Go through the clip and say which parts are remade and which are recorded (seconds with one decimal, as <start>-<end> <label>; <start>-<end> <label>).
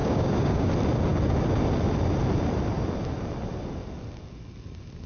0.0-0.7 remade; 0.7-5.1 recorded